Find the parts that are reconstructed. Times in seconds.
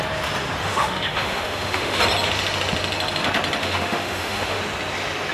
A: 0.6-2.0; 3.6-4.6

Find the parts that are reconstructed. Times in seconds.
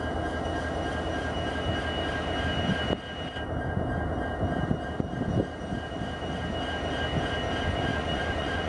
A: 7.9-8.7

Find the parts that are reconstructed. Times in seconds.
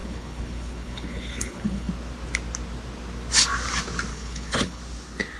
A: 0.0-1.9; 4.1-4.8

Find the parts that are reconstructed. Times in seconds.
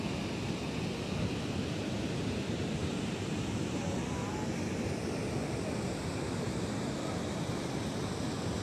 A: none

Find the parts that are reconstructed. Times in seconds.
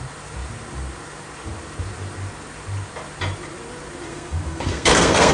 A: 4.1-5.3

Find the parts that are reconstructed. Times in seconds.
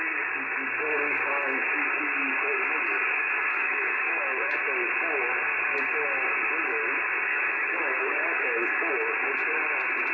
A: 3.5-4.5; 7.3-8.9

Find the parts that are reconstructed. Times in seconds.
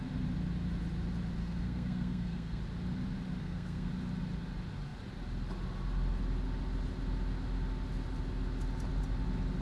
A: 1.4-2.6; 3.4-3.9